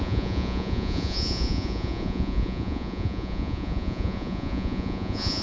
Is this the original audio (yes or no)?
no